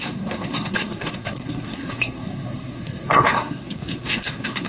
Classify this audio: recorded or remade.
remade